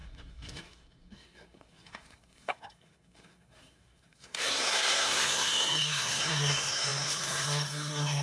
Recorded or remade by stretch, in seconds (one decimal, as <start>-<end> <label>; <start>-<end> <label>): 0.0-8.2 remade